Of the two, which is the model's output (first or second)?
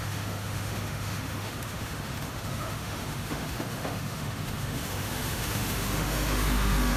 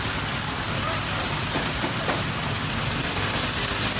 first